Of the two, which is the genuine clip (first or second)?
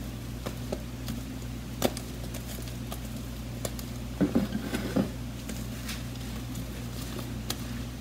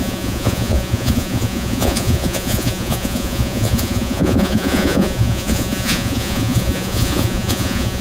first